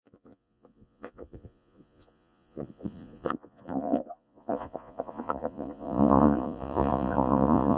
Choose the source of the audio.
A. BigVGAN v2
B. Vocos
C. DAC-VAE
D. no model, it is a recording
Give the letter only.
B